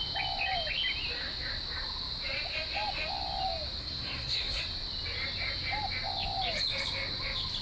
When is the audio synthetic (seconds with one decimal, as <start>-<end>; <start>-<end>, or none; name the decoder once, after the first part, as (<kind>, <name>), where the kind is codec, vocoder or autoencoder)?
3.8-4.6 (codec, SNAC)